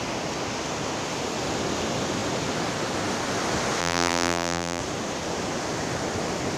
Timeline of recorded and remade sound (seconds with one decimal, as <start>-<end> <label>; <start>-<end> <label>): 0.0-3.8 recorded; 3.8-4.8 remade; 4.8-6.6 recorded